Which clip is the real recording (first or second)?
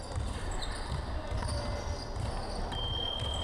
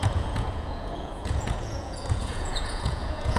first